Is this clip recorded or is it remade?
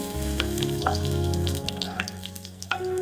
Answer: remade